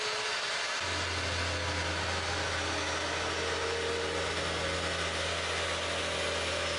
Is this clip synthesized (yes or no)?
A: no